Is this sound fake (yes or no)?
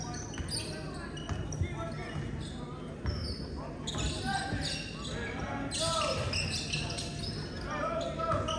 no